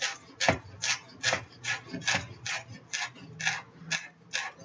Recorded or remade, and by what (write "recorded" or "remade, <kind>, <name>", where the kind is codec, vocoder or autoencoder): recorded